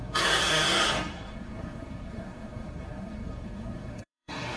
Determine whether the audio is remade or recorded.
remade